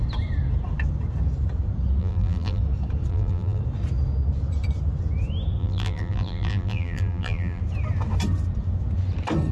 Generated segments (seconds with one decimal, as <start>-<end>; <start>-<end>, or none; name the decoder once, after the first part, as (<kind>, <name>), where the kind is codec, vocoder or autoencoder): 2.0-2.6 (vocoder, BigVGAN v2); 3.1-3.6; 5.6-7.6